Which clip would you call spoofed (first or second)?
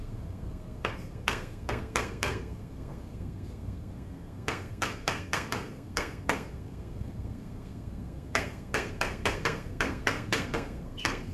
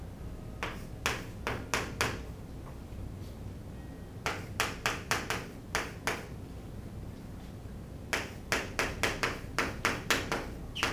first